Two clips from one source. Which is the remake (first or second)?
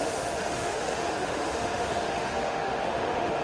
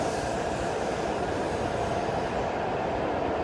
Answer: first